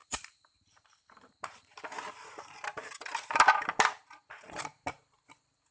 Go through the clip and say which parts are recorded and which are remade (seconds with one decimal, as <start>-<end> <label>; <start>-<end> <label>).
0.0-2.0 remade; 2.0-2.7 recorded; 2.7-5.0 remade; 5.0-5.7 recorded